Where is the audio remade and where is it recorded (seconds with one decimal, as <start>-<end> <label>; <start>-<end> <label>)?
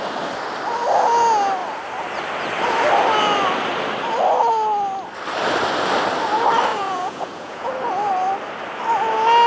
0.0-6.7 recorded; 6.7-7.7 remade; 7.7-9.5 recorded